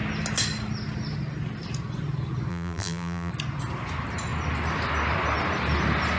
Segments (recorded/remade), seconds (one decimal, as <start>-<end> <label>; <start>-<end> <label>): 0.0-2.5 recorded; 2.5-3.3 remade; 3.3-6.2 recorded